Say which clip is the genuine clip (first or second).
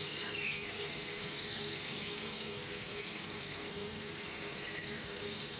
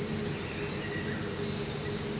second